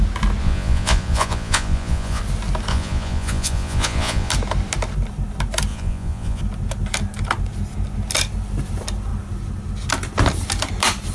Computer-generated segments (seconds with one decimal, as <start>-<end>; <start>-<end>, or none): 0.4-2.2; 2.7-4.3; 5.7-6.4